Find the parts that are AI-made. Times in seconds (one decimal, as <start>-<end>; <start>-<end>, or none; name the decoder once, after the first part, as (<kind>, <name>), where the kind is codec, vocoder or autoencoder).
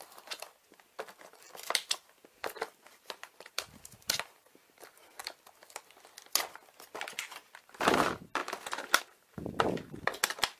2.9-5.2 (vocoder, BigVGAN v2)